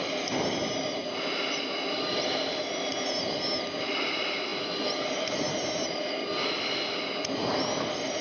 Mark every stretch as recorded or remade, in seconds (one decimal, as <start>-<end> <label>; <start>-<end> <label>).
0.0-8.2 recorded